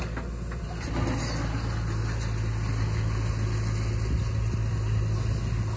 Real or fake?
real